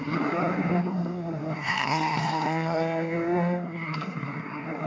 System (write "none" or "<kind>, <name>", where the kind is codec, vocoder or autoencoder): codec, SNAC